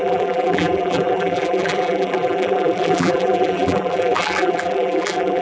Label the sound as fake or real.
fake